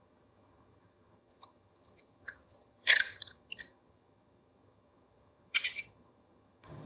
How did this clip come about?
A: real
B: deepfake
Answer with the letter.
B